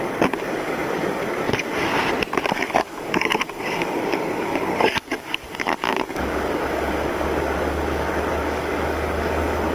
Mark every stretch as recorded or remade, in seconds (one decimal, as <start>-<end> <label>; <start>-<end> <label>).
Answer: 0.0-1.9 remade; 1.9-2.5 recorded; 2.5-9.7 remade

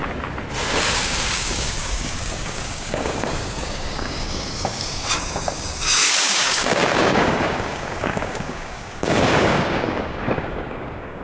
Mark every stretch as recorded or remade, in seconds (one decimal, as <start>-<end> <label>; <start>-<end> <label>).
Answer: 0.0-0.7 recorded; 0.7-11.2 remade

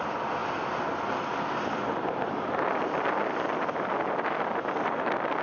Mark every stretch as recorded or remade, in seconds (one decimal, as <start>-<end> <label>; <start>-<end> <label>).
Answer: 0.0-5.4 recorded

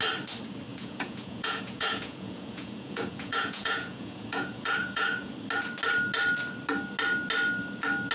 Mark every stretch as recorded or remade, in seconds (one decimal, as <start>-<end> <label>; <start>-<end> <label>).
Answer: 0.0-0.7 recorded; 0.7-5.3 remade; 5.3-8.1 recorded

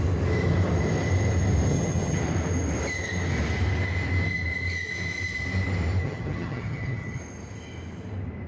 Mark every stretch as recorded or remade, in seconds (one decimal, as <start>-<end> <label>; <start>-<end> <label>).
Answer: 0.0-1.7 recorded; 1.7-2.2 remade; 2.2-6.0 recorded; 6.0-7.2 remade; 7.2-8.5 recorded

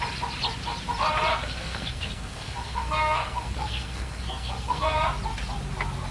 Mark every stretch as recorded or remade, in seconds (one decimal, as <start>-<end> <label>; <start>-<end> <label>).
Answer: 0.0-1.3 recorded; 1.3-5.0 remade; 5.0-6.1 recorded